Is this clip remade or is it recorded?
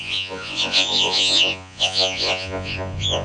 remade